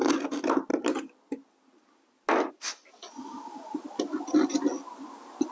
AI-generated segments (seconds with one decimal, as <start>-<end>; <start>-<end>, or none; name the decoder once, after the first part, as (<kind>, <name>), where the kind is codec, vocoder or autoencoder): none